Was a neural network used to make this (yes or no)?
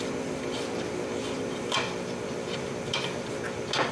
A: no